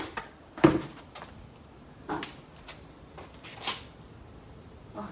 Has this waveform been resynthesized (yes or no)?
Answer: no